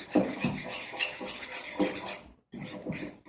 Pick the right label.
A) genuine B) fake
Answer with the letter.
A